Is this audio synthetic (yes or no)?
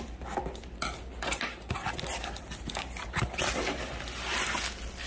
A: no